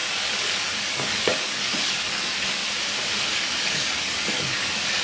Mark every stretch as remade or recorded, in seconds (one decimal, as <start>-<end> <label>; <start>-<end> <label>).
0.0-2.6 remade; 2.6-3.2 recorded; 3.2-5.0 remade